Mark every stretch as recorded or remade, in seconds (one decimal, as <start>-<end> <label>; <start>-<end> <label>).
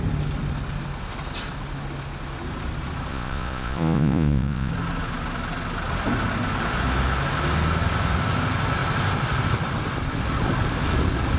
0.0-3.1 recorded; 3.1-4.7 remade; 4.7-11.4 recorded